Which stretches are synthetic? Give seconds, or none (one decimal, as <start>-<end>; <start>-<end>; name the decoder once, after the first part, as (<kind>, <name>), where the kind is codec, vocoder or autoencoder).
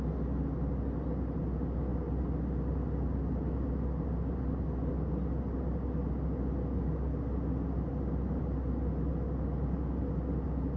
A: none